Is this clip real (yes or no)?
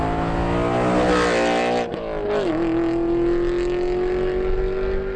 yes